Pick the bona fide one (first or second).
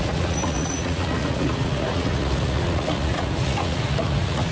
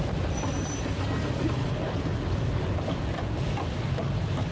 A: second